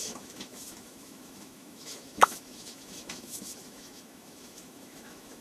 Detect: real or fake fake